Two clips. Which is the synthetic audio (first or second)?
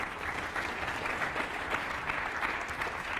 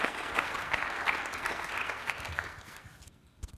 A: second